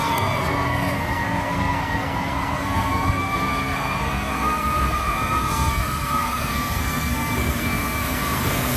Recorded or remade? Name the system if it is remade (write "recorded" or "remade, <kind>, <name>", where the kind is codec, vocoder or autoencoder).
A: remade, codec, SNAC